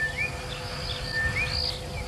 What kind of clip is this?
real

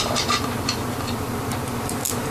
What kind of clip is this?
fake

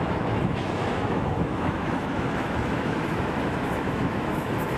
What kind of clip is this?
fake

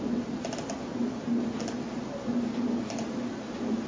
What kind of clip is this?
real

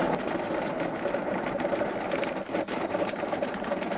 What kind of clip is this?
fake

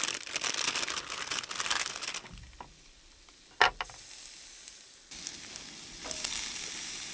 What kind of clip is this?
real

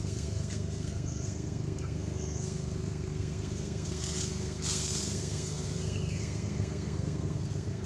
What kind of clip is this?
fake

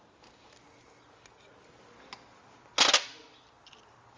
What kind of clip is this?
real